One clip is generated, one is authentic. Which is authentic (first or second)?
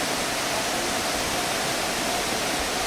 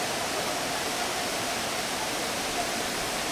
first